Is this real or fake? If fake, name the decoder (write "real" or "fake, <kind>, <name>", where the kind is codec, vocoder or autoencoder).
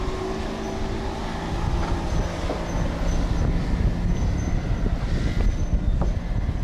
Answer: real